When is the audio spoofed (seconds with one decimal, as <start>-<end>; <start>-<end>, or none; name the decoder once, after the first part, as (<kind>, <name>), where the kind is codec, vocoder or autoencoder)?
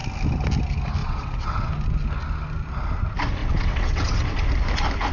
1.0-1.7 (vocoder, WaveNeXt); 3.4-4.4